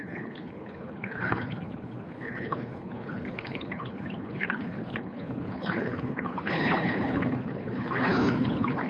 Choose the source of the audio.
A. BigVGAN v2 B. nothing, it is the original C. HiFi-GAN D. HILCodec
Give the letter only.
D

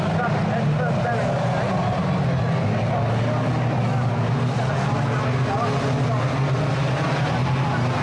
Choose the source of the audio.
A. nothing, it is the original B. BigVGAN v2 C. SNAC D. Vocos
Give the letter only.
A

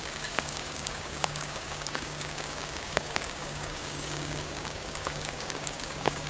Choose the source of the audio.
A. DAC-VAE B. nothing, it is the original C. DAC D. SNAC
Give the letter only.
C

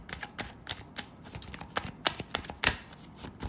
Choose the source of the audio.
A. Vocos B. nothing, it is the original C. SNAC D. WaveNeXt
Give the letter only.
B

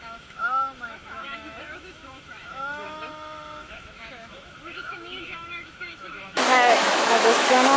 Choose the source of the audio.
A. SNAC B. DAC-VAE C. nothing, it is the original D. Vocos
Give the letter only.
B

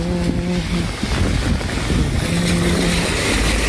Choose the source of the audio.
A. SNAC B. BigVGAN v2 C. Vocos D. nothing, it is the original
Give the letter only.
D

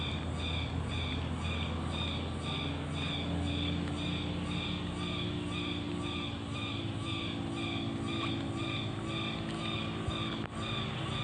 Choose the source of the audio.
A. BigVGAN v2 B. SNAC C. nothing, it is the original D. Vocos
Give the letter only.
C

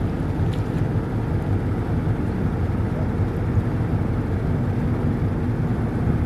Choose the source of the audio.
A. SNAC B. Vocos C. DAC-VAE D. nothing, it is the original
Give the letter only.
D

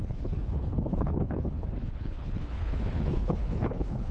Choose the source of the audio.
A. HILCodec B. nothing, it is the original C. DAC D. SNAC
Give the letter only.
A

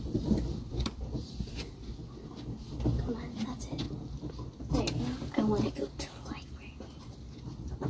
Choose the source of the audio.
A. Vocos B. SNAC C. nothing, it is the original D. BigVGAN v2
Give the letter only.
C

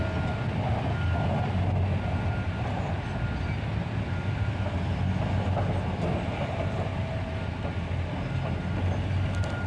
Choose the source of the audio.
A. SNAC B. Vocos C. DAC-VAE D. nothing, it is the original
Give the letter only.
D